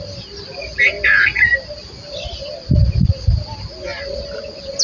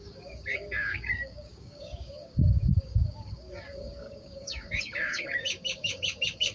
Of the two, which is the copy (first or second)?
second